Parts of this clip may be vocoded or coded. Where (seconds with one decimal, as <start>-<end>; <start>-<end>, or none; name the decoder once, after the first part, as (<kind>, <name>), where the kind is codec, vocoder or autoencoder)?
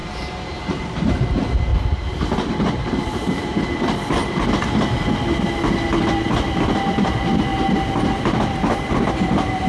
0.0-1.0 (vocoder, BigVGAN v2); 1.7-3.8